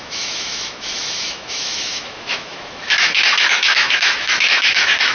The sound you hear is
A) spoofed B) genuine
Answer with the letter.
A